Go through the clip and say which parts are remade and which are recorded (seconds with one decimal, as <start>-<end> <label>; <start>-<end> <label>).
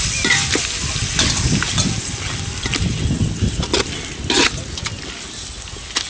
0.0-6.1 recorded